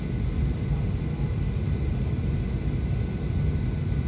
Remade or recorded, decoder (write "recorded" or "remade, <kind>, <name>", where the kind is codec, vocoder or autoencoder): recorded